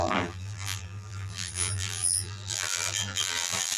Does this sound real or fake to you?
fake